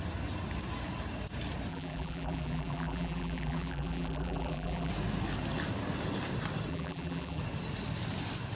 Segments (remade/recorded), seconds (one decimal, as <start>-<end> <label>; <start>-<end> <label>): 0.0-1.7 recorded; 1.7-4.9 remade; 4.9-6.7 recorded; 6.7-7.4 remade; 7.4-8.6 recorded